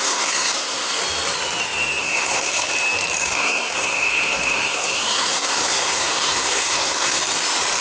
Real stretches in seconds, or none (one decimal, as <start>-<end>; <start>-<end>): 1.0-2.0; 2.7-3.2; 7.2-7.8